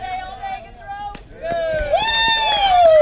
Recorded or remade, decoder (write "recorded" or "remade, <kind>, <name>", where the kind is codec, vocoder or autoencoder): recorded